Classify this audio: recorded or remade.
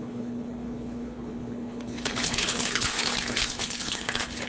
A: remade